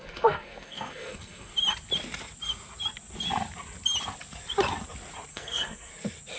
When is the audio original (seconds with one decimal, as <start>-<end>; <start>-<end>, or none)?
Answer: 1.5-5.3; 5.9-6.4